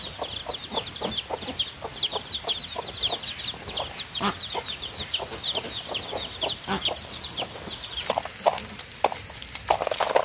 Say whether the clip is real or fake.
real